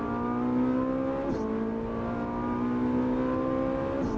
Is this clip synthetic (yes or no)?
no